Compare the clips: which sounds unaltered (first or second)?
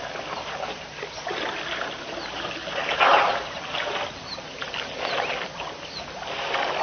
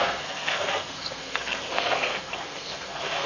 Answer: first